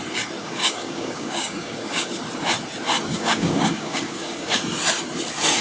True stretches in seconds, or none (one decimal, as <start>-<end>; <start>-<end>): 0.0-0.4; 2.2-3.1; 4.6-5.6